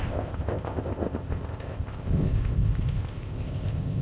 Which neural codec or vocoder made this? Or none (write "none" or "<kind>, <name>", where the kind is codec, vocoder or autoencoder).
codec, ZipCodec